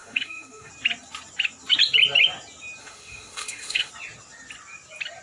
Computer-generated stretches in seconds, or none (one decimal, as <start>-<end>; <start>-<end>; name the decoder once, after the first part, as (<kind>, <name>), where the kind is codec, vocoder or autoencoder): 0.0-0.7 (autoencoder, DAC-VAE); 2.8-3.9